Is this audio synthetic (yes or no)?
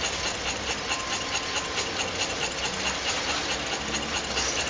no